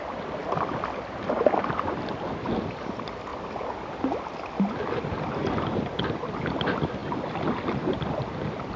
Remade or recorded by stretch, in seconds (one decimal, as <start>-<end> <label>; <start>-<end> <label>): 0.0-8.8 recorded